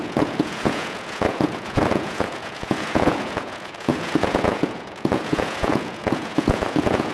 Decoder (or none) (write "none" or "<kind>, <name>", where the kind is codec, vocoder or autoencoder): vocoder, Vocos